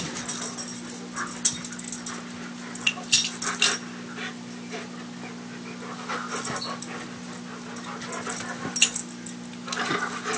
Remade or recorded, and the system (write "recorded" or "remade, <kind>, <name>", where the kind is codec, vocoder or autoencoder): recorded